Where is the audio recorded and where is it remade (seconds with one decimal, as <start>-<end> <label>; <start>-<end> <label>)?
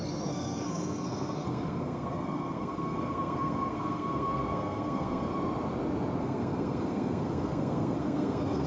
0.0-5.3 remade; 5.3-6.2 recorded; 6.2-8.7 remade